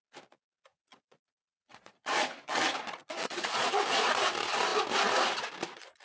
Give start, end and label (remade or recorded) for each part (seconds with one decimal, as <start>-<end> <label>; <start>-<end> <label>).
0.0-0.7 recorded; 0.7-3.8 remade; 3.8-6.0 recorded